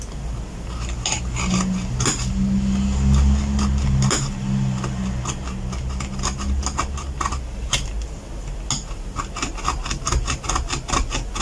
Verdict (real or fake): real